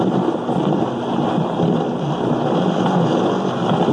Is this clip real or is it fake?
real